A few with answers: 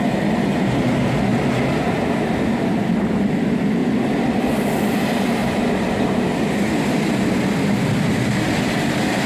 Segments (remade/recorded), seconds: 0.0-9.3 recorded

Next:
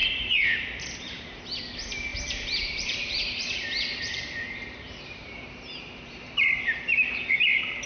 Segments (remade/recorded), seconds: 0.0-1.4 remade; 1.4-2.1 recorded; 2.1-6.8 remade; 6.8-7.9 recorded

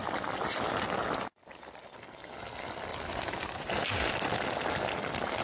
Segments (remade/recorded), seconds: 0.0-2.9 recorded; 2.9-3.7 remade; 3.7-5.4 recorded

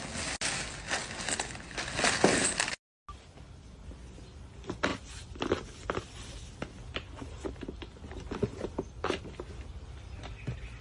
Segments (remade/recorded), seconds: 0.0-10.8 recorded